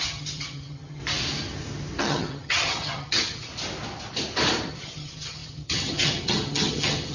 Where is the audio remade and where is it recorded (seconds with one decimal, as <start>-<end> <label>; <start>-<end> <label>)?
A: 0.0-1.0 remade; 1.0-2.0 recorded; 2.0-3.5 remade; 3.5-4.7 recorded; 4.7-7.1 remade